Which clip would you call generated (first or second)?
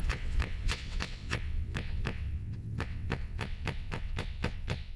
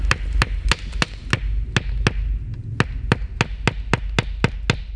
first